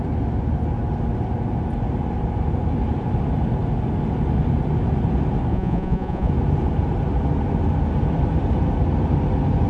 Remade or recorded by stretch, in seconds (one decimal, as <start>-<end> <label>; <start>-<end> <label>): 0.0-5.5 recorded; 5.5-6.3 remade; 6.3-9.7 recorded